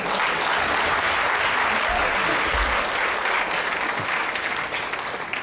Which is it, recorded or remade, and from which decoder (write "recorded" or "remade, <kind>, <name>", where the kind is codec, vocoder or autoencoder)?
recorded